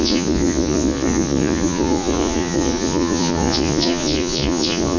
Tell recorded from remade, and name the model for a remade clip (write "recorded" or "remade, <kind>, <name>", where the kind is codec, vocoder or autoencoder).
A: remade, vocoder, Vocos